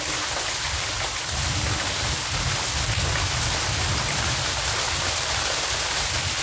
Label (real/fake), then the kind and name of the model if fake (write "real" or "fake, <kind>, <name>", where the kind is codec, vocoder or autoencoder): real